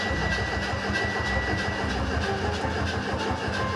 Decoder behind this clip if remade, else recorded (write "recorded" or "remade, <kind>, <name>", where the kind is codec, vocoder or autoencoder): recorded